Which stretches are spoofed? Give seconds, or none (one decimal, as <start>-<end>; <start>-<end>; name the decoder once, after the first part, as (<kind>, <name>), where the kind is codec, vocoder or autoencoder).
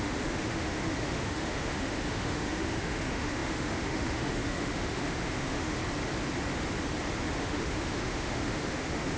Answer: 0.0-5.8 (autoencoder, DAC-VAE); 7.4-9.2